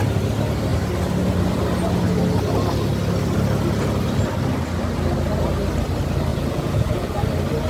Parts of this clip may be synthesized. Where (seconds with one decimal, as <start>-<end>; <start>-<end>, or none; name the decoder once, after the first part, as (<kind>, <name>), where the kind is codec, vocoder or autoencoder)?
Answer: 6.3-7.2 (vocoder, Vocos)